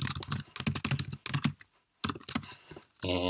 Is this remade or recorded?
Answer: recorded